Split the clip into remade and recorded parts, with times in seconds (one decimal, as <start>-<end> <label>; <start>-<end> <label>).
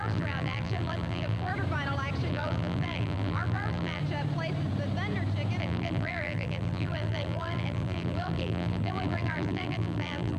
0.0-1.5 remade; 1.5-2.3 recorded; 2.3-4.0 remade; 4.0-5.6 recorded; 5.6-10.4 remade